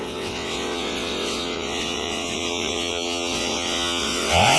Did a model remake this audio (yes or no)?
yes